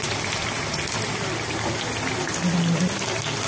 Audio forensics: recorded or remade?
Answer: recorded